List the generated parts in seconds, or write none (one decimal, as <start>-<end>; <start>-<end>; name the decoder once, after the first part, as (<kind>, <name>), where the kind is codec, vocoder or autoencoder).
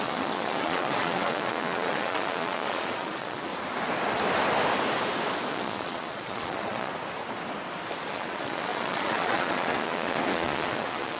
0.0-3.5 (vocoder, Vocos); 5.5-6.9; 8.1-11.2